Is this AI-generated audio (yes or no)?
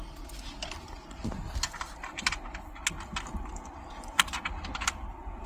no